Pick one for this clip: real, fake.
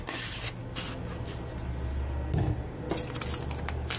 real